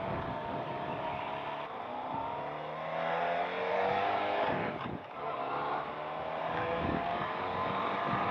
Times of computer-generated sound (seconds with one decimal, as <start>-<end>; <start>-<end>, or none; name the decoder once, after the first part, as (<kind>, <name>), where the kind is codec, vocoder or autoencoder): 0.0-1.3 (codec, DAC); 3.7-5.4; 6.4-8.3